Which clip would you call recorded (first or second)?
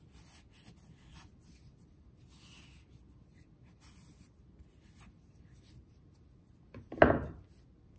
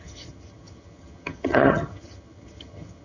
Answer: first